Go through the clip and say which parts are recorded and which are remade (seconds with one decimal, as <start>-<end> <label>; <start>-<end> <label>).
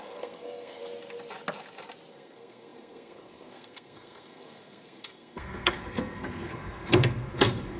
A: 0.0-0.8 remade; 0.8-2.1 recorded; 2.1-7.8 remade